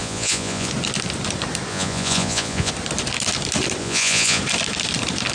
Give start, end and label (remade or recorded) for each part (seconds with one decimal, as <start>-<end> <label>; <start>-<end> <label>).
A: 0.0-0.7 remade; 0.7-1.7 recorded; 1.7-2.7 remade; 2.7-3.8 recorded; 3.8-4.4 remade; 4.4-5.3 recorded